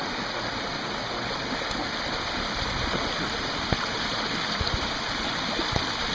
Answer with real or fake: real